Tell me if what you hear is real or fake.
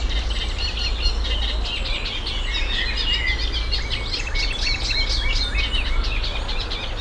real